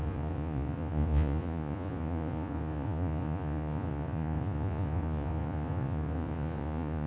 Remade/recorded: remade